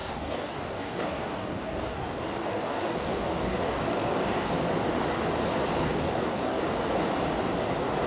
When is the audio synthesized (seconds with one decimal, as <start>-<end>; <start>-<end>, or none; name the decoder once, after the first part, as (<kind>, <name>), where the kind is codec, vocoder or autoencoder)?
0.0-4.5 (codec, DAC); 5.8-6.6